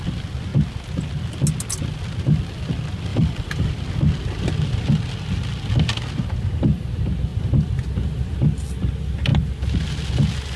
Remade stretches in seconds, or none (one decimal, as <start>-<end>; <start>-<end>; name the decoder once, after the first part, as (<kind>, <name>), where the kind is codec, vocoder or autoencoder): 3.1-3.7 (vocoder, BigVGAN v2)